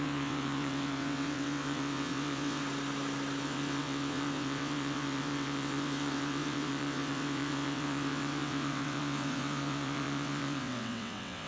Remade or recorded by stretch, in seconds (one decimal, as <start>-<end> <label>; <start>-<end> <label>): 0.0-2.6 remade; 2.6-3.4 recorded; 3.4-11.5 remade